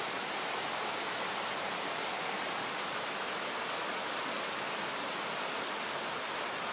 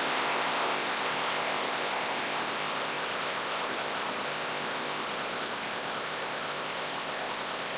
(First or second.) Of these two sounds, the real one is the first